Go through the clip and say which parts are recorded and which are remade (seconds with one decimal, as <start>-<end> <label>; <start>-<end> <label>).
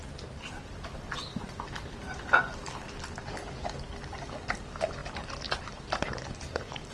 0.0-6.9 remade